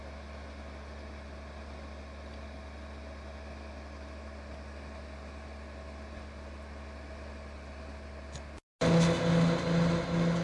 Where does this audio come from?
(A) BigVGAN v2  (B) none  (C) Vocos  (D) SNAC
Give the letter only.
B